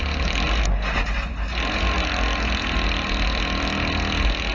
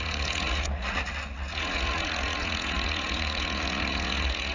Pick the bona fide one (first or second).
first